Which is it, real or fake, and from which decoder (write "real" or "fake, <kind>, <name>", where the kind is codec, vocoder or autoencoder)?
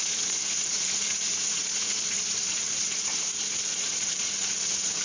fake, vocoder, Vocos